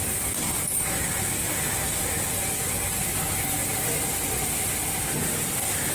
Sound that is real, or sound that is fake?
real